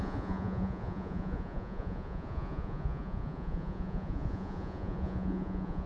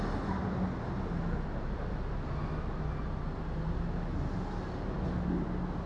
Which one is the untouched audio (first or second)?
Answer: second